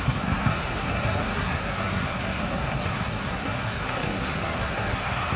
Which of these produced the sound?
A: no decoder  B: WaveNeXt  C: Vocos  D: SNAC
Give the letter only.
D